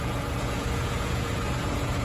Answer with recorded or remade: remade